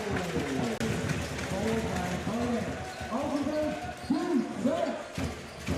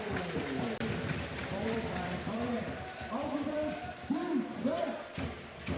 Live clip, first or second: first